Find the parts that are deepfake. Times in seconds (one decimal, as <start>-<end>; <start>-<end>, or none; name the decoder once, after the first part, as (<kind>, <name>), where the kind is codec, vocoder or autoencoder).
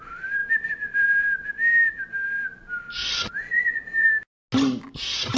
3.0-4.1 (vocoder, Vocos)